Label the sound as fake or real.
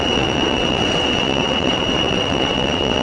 fake